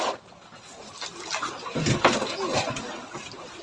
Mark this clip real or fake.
real